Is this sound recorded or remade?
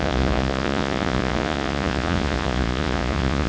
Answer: remade